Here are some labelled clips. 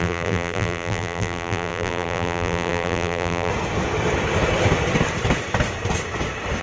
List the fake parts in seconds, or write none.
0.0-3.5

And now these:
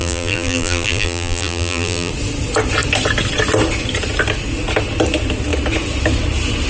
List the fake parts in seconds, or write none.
0.0-2.1

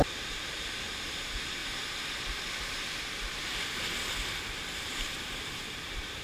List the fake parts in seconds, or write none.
0.0-1.6; 4.8-6.2

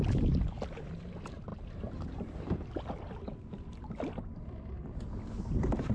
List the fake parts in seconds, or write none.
0.0-5.9

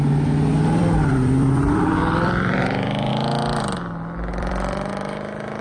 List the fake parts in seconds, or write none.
0.8-3.1; 4.3-4.9

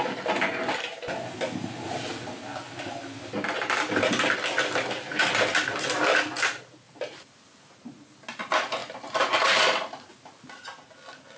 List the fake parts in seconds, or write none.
8.8-10.0

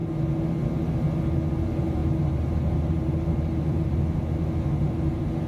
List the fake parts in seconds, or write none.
1.5-5.5

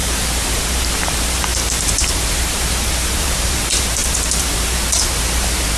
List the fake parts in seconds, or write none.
0.0-5.8